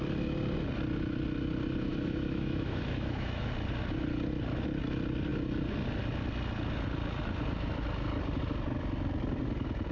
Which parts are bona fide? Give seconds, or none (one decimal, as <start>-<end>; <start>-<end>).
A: 0.0-1.9; 3.5-9.9